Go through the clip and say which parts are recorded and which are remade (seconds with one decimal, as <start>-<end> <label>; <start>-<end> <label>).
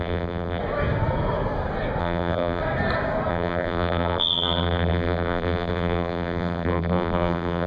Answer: 0.0-0.6 remade; 0.6-2.0 recorded; 2.0-2.6 remade; 2.6-3.3 recorded; 3.3-7.7 remade